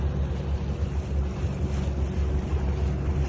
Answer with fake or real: real